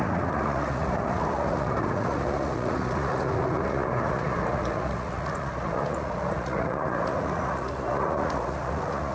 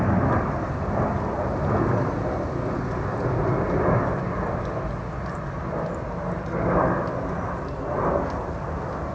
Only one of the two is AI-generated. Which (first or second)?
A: first